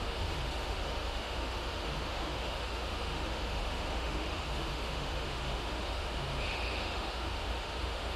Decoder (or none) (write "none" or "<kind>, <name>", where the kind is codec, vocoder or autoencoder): autoencoder, DAC-VAE